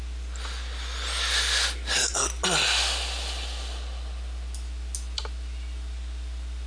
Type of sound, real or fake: real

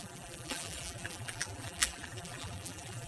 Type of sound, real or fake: fake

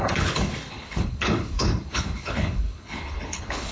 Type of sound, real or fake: fake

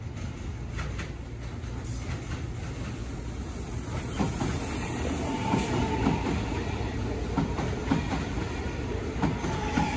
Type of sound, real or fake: real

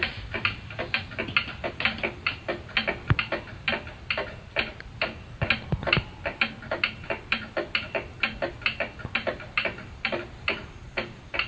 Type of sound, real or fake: real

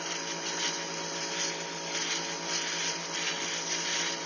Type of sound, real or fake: real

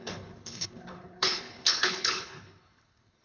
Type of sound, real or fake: fake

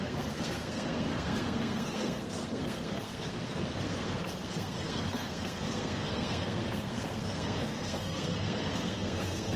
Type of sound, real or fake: fake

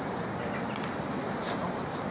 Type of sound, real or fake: real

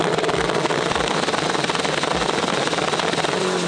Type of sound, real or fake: real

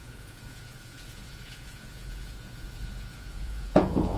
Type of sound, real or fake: fake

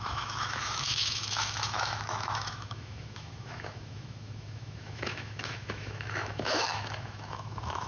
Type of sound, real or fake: fake